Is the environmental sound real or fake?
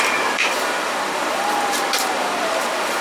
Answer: fake